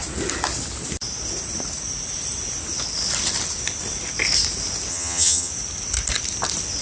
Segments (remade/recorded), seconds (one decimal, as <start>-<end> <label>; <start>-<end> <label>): 0.0-4.9 recorded; 4.9-5.5 remade; 5.5-6.8 recorded